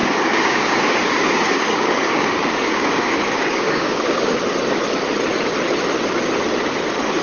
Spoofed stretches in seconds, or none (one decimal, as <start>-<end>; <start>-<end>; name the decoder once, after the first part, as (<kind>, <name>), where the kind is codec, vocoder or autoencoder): 0.0-4.3 (codec, DAC)